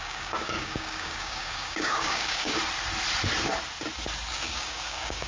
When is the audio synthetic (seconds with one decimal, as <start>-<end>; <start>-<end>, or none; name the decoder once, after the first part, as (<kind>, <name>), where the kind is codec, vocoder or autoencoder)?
0.0-2.6 (codec, DAC); 4.3-5.3